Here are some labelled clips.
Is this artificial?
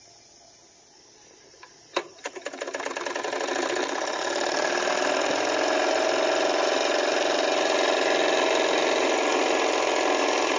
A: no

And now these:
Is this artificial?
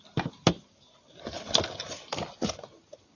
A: no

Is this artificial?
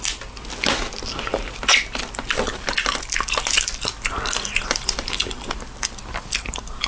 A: no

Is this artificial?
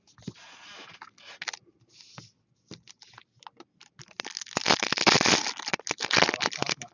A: no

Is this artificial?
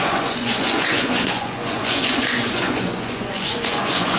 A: yes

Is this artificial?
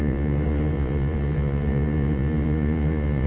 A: yes